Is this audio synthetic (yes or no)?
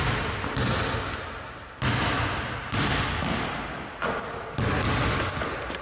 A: no